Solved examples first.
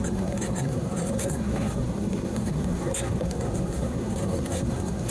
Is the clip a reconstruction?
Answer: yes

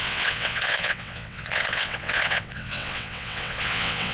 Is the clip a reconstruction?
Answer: yes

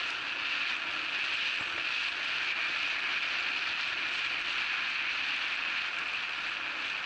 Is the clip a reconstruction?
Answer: no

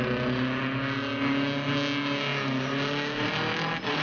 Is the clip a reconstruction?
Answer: no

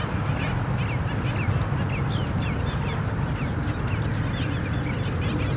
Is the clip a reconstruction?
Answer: no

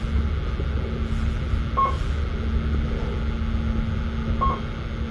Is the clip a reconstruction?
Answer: no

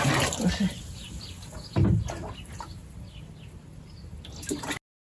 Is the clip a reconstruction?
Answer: no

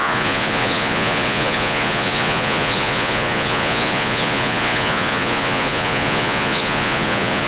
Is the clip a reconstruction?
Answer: yes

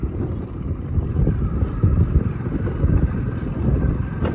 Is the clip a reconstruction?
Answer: no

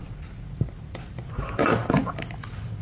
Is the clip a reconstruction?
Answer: no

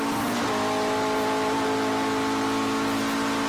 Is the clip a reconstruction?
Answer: no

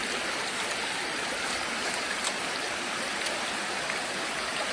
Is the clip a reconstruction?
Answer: yes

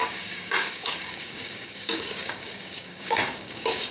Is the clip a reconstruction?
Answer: yes